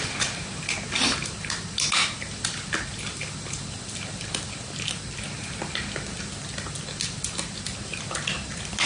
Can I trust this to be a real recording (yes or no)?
yes